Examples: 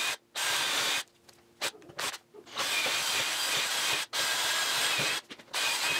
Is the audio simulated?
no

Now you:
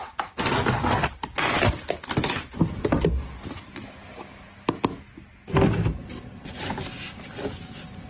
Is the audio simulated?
no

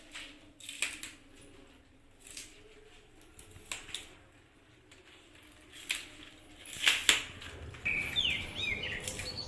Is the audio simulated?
no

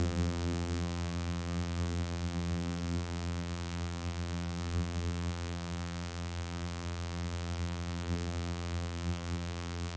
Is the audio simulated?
yes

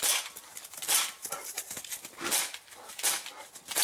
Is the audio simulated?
no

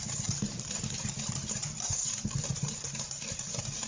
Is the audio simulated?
yes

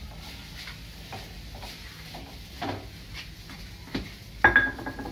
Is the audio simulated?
no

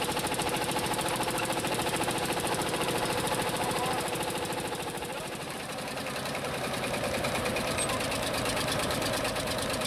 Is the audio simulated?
yes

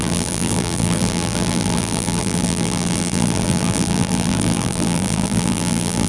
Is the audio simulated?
yes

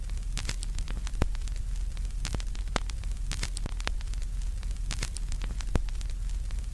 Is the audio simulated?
yes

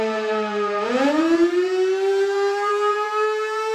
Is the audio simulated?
yes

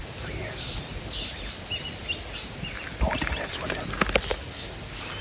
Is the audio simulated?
no